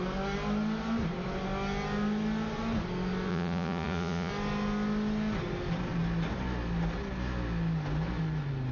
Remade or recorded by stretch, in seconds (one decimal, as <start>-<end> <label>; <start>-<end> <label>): 0.0-3.3 recorded; 3.3-4.3 remade; 4.3-8.7 recorded